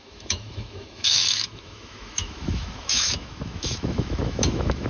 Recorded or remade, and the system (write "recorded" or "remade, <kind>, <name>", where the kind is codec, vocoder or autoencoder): remade, autoencoder, DAC-VAE